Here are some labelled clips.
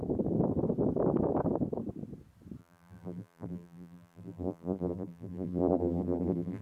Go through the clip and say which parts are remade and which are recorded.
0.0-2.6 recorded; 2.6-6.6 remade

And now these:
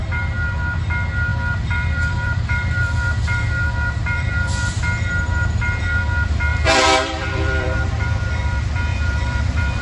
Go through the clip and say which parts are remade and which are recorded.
0.0-0.6 remade; 0.6-1.3 recorded; 1.3-4.8 remade; 4.8-6.5 recorded; 6.5-8.2 remade; 8.2-8.9 recorded; 8.9-9.8 remade

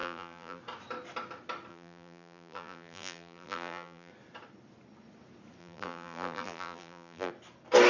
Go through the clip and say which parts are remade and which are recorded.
0.0-0.6 remade; 0.6-1.7 recorded; 1.7-4.1 remade; 4.1-5.6 recorded; 5.6-7.3 remade; 7.3-7.9 recorded

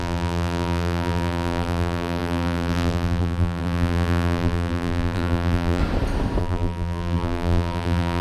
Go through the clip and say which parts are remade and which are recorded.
0.0-5.8 remade; 5.8-6.4 recorded; 6.4-8.2 remade

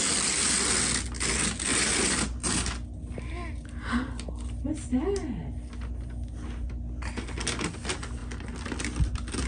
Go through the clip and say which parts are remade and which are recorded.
0.0-1.7 recorded; 1.7-2.5 remade; 2.5-8.2 recorded; 8.2-9.5 remade

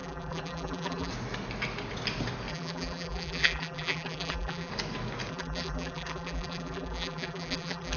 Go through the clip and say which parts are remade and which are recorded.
0.0-1.1 remade; 1.1-2.5 recorded; 2.5-4.7 remade; 4.7-5.3 recorded; 5.3-8.0 remade

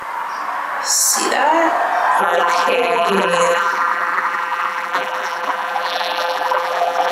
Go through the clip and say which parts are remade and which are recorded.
0.0-2.2 recorded; 2.2-7.1 remade

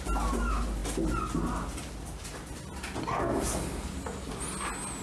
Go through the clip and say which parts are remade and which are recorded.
0.0-5.0 recorded